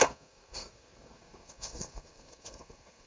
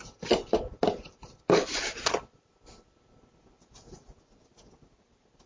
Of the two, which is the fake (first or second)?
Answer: first